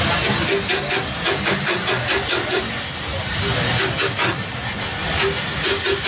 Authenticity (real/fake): real